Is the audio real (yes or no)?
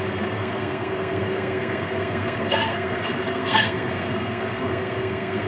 no